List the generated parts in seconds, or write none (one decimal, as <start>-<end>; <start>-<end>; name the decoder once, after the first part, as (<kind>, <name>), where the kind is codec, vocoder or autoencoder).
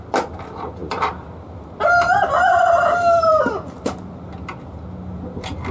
0.8-4.2 (vocoder, BigVGAN v2)